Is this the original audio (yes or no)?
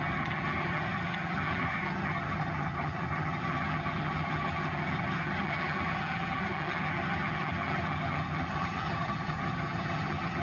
no